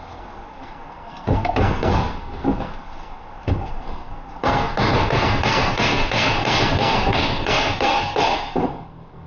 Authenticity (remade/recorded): remade